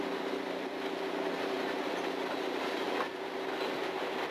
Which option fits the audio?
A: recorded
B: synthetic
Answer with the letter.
A